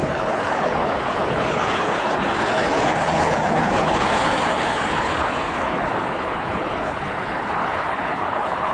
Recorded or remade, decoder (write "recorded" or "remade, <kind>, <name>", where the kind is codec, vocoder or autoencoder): remade, codec, HILCodec